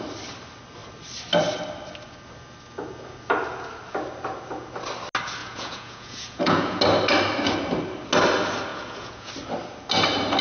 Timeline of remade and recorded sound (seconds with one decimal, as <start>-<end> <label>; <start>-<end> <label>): 0.0-5.4 recorded; 5.4-6.8 remade; 6.8-8.7 recorded; 8.7-9.3 remade; 9.3-10.4 recorded